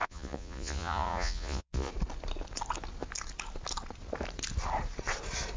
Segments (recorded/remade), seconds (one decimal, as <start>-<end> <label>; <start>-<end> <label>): 0.0-1.9 remade; 1.9-5.6 recorded